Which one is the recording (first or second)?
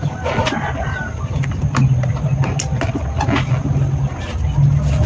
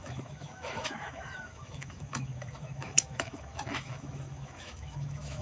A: first